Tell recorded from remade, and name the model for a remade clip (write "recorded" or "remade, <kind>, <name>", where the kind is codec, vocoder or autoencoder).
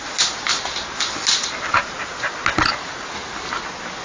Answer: recorded